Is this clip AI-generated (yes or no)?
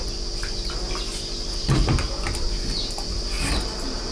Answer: no